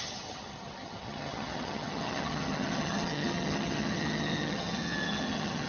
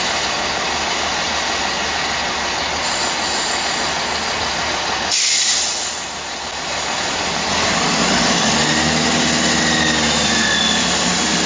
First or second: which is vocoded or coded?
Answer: first